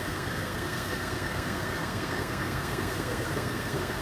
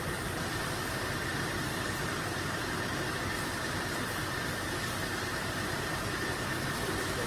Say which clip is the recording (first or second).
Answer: second